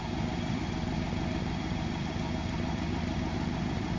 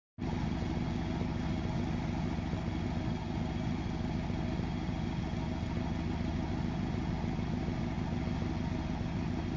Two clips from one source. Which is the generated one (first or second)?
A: first